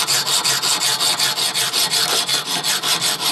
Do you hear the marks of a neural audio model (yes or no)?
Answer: no